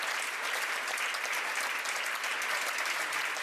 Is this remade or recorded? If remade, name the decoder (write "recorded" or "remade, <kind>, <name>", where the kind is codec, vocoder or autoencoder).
recorded